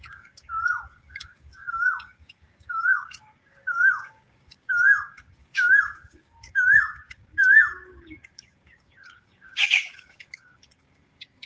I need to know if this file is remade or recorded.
remade